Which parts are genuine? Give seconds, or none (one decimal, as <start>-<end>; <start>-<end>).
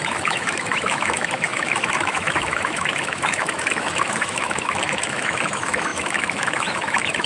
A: none